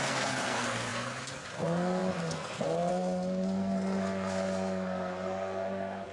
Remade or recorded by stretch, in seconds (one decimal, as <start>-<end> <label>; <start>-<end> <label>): 0.0-6.1 remade